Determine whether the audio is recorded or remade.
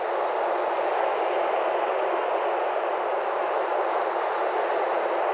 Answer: recorded